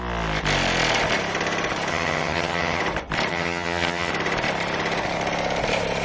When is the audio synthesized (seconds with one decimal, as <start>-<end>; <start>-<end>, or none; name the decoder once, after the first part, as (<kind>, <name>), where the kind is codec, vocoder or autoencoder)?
1.9-2.8 (vocoder, HiFi-GAN); 3.3-4.1